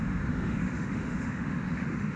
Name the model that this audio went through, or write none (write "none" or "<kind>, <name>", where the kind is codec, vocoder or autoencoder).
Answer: autoencoder, DAC-VAE